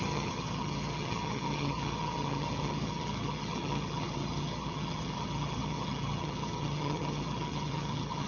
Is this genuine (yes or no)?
no